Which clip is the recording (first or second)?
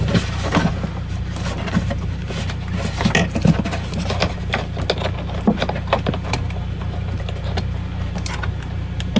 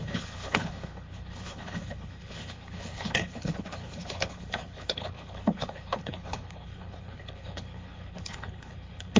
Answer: first